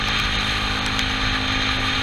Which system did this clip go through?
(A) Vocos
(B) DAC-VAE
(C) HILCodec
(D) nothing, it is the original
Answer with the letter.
D